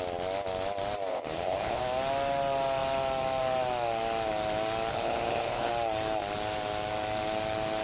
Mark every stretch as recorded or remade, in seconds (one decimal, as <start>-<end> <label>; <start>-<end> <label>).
0.0-1.1 recorded; 1.1-1.8 remade; 1.8-4.9 recorded; 4.9-5.7 remade; 5.7-7.8 recorded